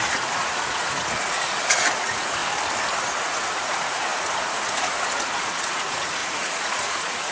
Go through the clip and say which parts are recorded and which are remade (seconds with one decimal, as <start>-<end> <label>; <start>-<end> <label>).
0.0-2.4 remade; 2.4-3.0 recorded; 3.0-7.3 remade